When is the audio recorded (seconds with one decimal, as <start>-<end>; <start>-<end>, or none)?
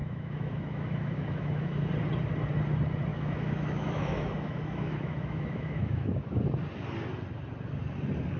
1.9-3.1; 6.4-8.4